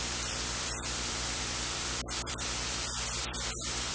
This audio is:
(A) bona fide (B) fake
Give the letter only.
B